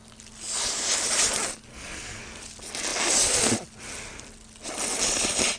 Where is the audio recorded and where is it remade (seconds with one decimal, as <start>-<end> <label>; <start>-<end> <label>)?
0.0-1.7 recorded; 1.7-2.2 remade; 2.2-5.6 recorded